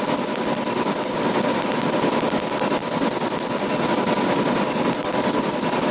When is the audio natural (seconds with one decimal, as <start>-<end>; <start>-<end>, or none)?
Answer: 0.0-5.9